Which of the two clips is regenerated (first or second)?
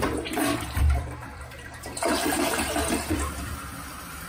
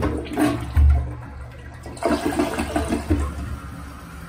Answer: first